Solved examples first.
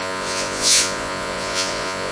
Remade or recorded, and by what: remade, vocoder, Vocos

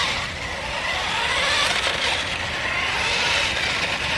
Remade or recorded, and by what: recorded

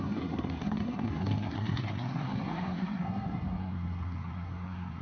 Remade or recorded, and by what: remade, codec, SNAC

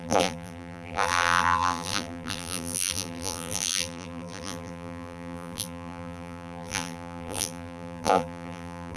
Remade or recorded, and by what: remade, vocoder, BigVGAN v2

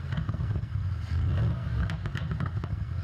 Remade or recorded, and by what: remade, codec, SNAC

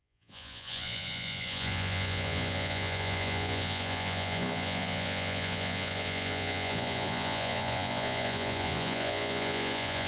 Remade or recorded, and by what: remade, vocoder, Vocos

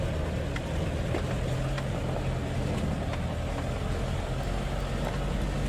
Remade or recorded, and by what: recorded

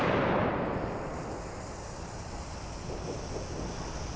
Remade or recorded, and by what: recorded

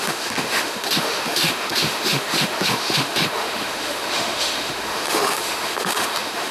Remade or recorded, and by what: remade, autoencoder, DAC-VAE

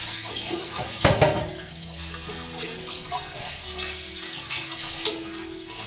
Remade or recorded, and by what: remade, codec, SNAC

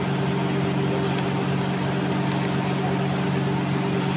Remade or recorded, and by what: recorded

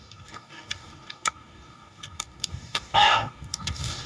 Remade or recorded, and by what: remade, codec, DAC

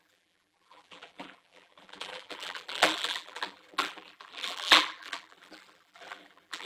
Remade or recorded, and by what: remade, vocoder, BigVGAN v2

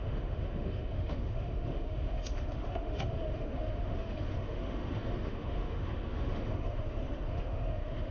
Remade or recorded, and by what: remade, autoencoder, DAC-VAE